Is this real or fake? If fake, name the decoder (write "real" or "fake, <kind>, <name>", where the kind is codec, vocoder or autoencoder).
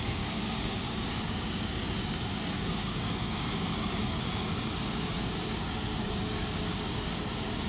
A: fake, codec, DAC